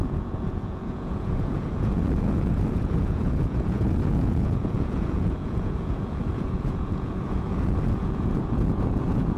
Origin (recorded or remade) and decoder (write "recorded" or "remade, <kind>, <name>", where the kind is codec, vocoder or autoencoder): remade, vocoder, Vocos